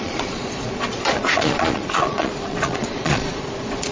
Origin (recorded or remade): remade